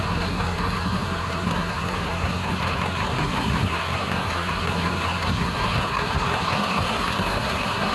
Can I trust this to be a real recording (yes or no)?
no